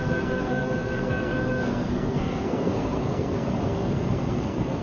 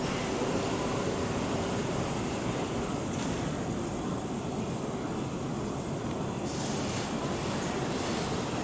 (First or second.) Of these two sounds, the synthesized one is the first